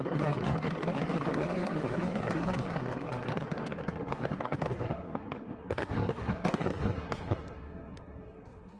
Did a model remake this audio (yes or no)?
yes